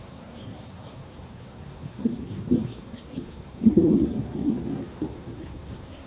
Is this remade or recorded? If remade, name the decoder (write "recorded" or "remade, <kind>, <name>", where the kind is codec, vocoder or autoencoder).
remade, codec, SNAC